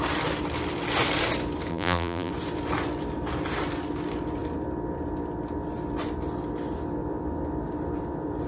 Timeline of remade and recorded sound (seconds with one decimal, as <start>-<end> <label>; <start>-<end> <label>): 0.0-1.7 recorded; 1.7-2.3 remade; 2.3-8.5 recorded